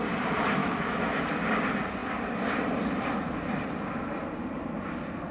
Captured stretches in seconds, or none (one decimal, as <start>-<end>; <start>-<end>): 0.0-0.6; 1.2-5.3